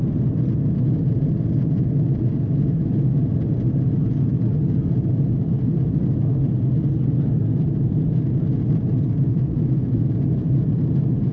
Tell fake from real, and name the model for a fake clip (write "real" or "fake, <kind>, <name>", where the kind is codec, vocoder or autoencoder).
fake, vocoder, BigVGAN v2